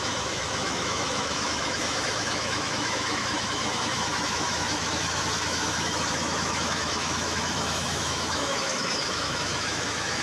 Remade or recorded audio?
remade